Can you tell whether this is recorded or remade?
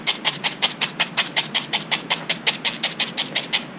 recorded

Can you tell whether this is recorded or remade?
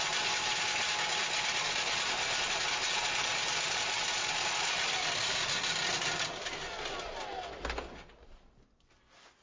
recorded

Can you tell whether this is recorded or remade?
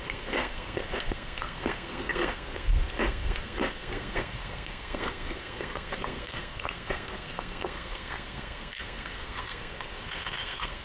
remade